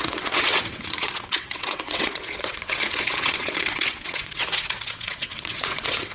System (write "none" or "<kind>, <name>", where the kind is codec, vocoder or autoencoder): vocoder, WaveNeXt